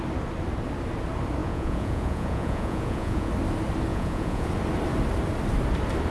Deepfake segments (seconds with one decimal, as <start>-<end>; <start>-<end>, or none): 1.4-3.3; 3.9-4.5